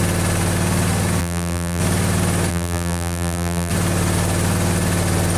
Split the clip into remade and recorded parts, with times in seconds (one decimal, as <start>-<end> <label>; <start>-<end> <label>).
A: 0.0-1.2 recorded; 1.2-1.8 remade; 1.8-2.5 recorded; 2.5-3.7 remade; 3.7-5.4 recorded